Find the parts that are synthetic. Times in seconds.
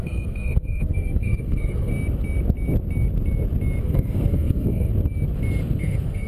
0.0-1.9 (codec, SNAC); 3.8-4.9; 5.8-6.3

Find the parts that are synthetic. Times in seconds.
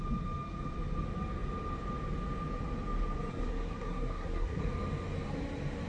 3.3-4.6 (codec, SNAC)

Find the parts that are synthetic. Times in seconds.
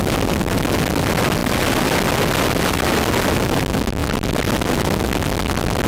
none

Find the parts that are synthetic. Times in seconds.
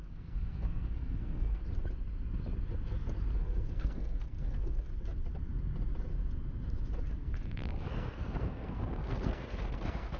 0.0-1.6 (codec, SNAC); 3.4-4.9; 7.1-10.2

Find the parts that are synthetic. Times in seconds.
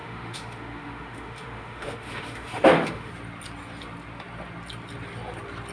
0.0-3.1 (autoencoder, DAC-VAE)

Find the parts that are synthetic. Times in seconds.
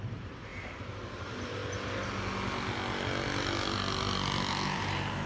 0.0-1.6 (vocoder, BigVGAN v2); 4.5-5.3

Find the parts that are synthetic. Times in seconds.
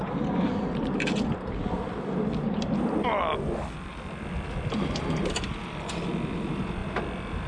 none